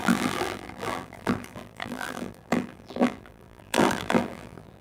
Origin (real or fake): fake